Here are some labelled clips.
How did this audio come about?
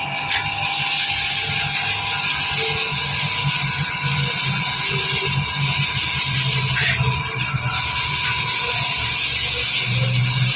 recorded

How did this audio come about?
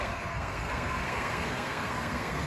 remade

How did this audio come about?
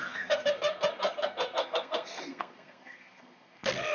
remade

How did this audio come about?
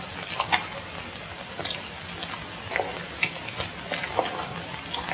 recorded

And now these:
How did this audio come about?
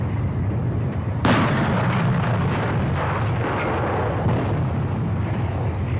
recorded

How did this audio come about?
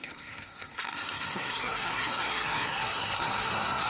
remade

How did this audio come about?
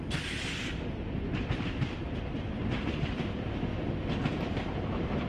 recorded